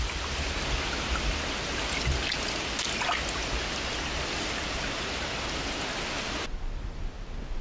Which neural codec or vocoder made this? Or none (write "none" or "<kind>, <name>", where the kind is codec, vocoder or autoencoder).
none